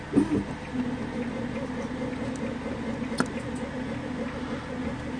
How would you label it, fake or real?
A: real